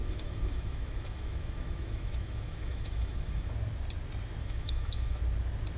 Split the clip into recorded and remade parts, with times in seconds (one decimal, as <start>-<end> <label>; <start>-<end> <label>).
0.0-3.5 remade; 3.5-4.4 recorded; 4.4-5.2 remade; 5.2-5.8 recorded